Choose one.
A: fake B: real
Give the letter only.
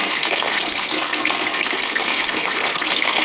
A